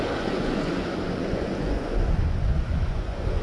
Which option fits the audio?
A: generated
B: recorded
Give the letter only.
A